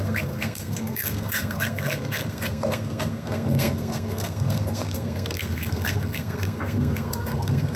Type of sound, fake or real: fake